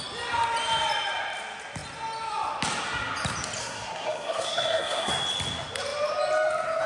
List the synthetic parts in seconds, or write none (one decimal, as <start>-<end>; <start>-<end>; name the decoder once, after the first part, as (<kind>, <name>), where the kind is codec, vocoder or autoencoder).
3.6-5.1 (codec, SNAC)